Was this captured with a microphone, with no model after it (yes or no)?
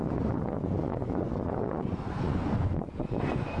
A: no